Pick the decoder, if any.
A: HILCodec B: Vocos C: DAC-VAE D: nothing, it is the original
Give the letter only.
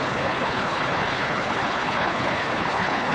A